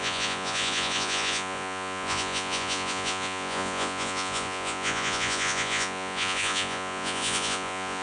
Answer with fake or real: fake